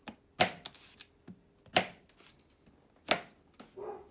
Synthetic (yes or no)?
no